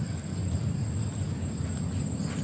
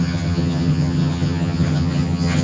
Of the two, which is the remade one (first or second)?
second